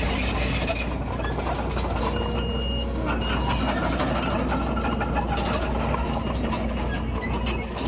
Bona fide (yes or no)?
yes